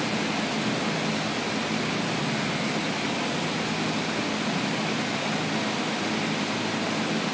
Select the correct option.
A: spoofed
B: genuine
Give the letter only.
B